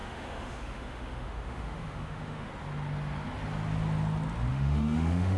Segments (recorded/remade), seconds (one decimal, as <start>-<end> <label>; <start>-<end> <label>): 0.0-2.5 remade; 2.5-4.5 recorded; 4.5-5.4 remade